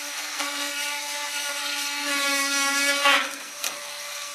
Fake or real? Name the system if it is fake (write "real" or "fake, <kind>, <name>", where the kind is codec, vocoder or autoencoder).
fake, codec, SNAC